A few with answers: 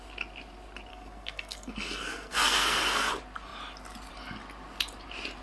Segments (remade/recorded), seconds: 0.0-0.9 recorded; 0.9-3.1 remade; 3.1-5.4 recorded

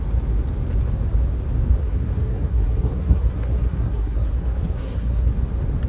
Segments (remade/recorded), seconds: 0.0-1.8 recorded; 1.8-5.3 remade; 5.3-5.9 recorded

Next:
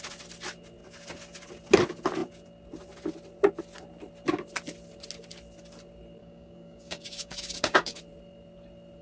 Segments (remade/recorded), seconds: 0.0-6.2 recorded; 6.2-8.0 remade; 8.0-9.0 recorded

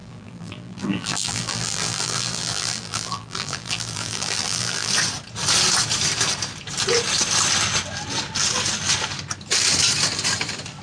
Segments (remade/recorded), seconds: 0.0-4.9 remade; 4.9-10.8 recorded